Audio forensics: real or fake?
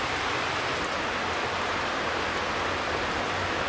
real